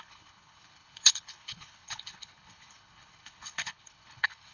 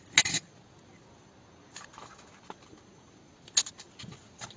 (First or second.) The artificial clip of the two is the first